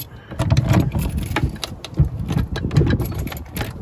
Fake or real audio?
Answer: real